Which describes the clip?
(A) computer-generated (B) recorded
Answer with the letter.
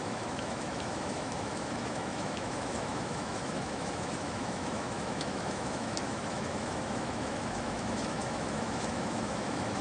A